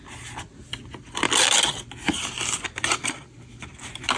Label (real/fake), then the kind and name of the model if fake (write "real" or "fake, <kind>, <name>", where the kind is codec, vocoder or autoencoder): real